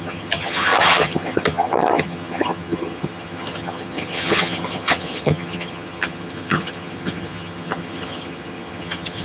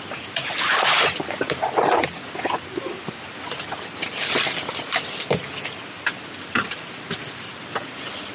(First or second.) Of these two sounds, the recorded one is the second